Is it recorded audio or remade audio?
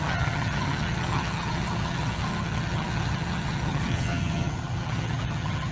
remade